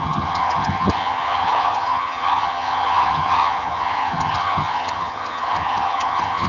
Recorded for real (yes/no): no